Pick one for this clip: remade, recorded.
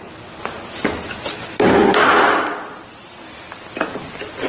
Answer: recorded